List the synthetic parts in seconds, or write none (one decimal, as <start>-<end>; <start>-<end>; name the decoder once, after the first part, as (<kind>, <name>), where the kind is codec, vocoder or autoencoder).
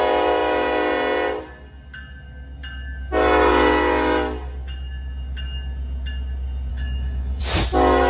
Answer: 6.7-7.4 (autoencoder, DAC-VAE)